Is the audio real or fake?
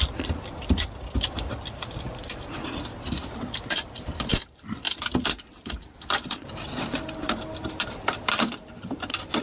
fake